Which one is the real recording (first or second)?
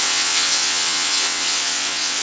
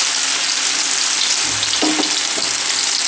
second